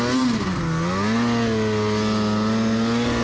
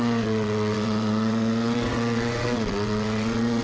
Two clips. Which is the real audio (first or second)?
first